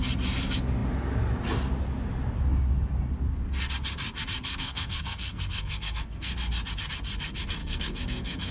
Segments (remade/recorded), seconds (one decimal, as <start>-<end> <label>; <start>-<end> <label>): 0.0-4.5 recorded; 4.5-6.3 remade; 6.3-7.6 recorded; 7.6-8.5 remade